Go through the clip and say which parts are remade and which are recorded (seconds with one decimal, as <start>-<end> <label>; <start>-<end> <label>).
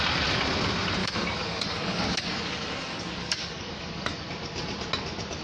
0.0-1.0 recorded; 1.0-4.2 remade; 4.2-5.4 recorded